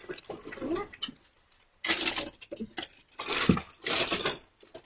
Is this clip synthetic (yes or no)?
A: no